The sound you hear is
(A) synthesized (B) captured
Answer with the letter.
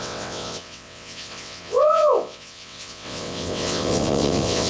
A